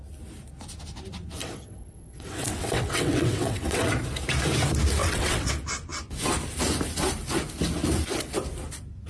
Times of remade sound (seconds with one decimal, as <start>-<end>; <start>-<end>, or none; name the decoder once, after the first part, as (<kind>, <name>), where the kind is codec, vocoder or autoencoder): 1.4-3.9 (vocoder, WaveNeXt); 5.0-5.5